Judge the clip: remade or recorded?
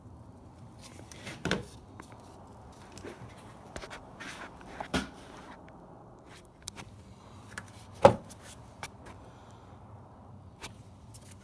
remade